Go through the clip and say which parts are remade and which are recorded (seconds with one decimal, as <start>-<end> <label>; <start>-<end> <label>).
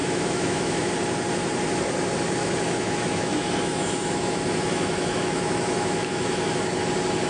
0.0-0.9 remade; 0.9-2.4 recorded; 2.4-6.8 remade; 6.8-7.3 recorded